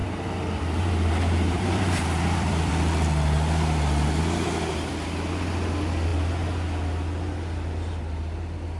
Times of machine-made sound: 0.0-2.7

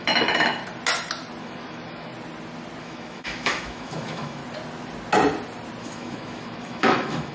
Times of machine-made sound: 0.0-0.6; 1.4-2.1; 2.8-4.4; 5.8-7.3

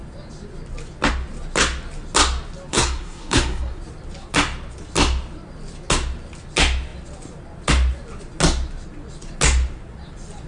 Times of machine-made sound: 2.7-3.8

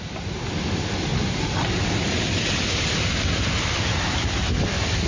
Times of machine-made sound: none